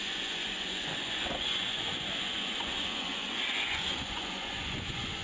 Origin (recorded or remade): remade